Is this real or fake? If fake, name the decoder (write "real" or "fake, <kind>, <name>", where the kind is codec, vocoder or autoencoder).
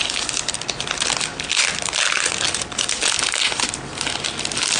real